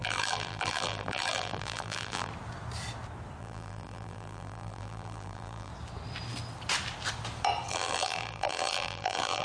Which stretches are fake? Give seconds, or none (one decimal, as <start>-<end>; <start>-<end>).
0.0-2.3; 3.4-5.7; 7.7-9.4

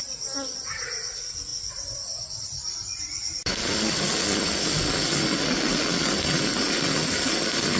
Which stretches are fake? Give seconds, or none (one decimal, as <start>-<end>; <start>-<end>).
none

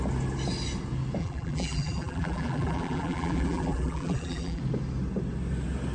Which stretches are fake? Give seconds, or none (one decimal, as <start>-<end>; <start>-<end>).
1.2-4.6

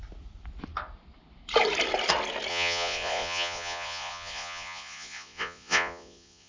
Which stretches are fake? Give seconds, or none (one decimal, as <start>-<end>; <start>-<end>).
2.5-6.5

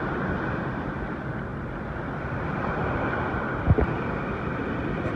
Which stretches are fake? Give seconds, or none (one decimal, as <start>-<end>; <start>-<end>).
none

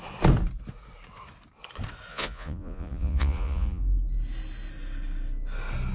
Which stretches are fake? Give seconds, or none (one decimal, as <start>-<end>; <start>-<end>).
2.1-3.8

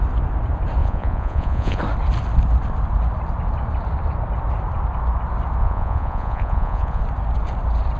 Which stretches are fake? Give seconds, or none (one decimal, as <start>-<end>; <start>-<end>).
0.8-1.8; 5.6-7.0

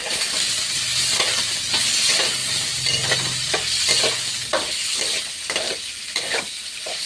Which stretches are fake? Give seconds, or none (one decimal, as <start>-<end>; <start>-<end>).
none